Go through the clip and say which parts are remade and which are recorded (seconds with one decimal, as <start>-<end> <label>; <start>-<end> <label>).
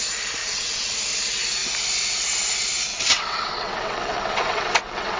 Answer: 0.0-0.4 recorded; 0.4-0.9 remade; 0.9-2.9 recorded; 2.9-5.2 remade